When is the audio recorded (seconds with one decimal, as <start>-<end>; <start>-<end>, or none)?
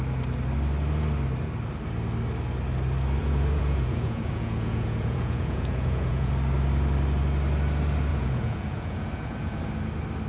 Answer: 0.0-3.2; 6.3-8.1; 9.6-10.3